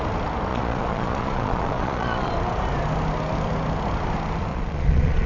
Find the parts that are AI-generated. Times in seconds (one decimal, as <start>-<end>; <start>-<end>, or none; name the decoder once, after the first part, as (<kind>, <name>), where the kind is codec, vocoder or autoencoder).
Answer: 0.5-2.3 (vocoder, Vocos); 4.5-5.3